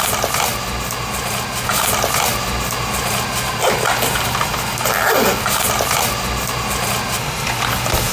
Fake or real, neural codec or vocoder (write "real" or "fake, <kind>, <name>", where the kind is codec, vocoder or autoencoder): real